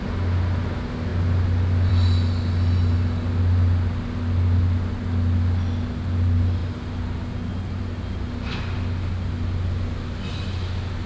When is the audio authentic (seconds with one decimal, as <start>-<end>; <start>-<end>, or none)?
0.0-11.1